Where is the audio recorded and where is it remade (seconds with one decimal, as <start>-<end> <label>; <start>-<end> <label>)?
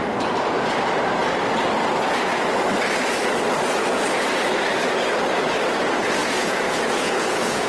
0.0-6.2 recorded; 6.2-7.7 remade